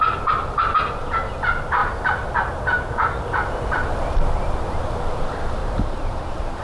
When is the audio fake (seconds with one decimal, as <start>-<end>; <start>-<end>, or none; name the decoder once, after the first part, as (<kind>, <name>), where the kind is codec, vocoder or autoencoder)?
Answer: 1.8-4.3 (vocoder, BigVGAN v2); 5.6-6.6